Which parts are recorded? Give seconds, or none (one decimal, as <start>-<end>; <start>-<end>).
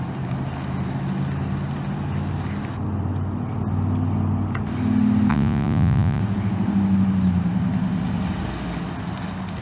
0.0-5.3; 6.2-9.6